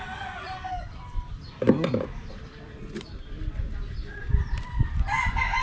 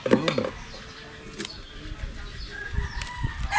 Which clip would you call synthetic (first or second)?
first